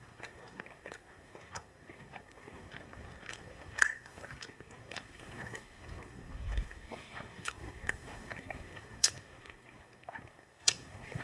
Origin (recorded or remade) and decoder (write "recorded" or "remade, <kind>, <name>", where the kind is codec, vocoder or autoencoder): remade, codec, SNAC